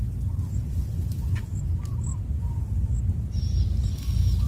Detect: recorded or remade recorded